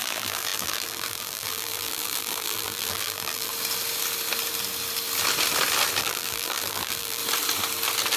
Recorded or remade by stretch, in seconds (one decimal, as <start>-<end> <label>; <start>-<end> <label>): 0.0-3.5 remade; 3.5-6.0 recorded; 6.0-7.2 remade; 7.2-8.2 recorded